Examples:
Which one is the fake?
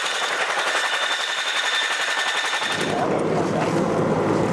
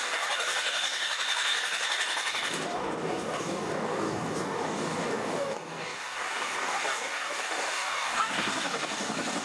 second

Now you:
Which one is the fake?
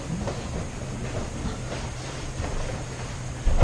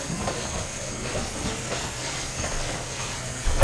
second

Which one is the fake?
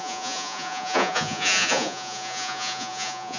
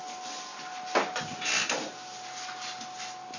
first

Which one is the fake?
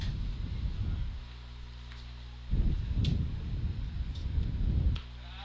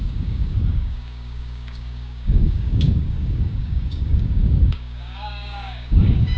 second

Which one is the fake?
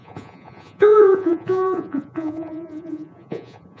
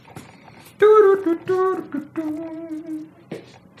first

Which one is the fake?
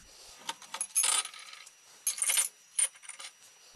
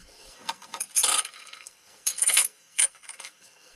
second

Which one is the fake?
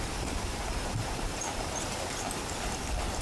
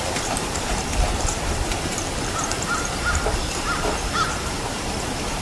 second